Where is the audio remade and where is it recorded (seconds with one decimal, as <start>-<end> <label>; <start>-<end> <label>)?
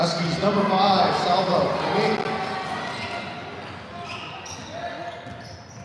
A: 0.0-5.8 recorded